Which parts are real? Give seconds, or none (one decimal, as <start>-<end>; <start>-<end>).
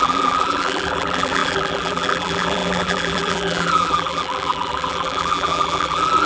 none